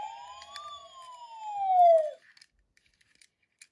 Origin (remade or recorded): recorded